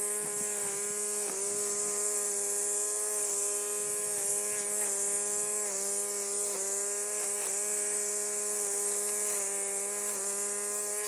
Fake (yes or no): no